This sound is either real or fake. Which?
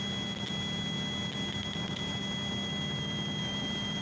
real